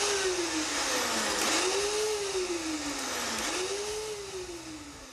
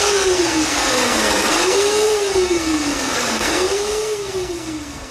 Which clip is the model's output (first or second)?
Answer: second